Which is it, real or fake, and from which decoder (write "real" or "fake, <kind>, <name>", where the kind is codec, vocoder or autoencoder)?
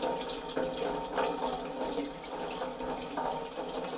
real